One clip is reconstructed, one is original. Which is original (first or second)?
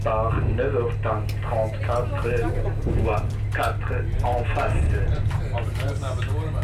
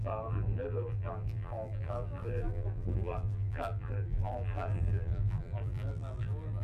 first